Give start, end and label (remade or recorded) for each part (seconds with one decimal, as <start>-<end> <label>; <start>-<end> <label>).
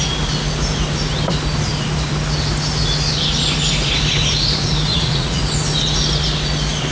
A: 0.0-4.9 recorded; 4.9-5.4 remade; 5.4-6.9 recorded